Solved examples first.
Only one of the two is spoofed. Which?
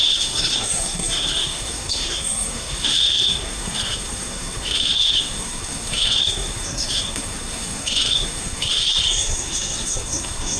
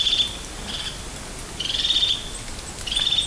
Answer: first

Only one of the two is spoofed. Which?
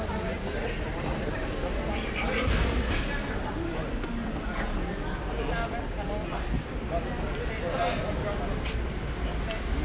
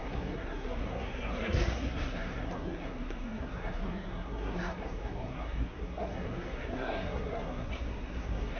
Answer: second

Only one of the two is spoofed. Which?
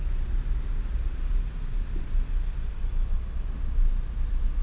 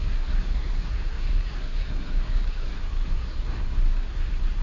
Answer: second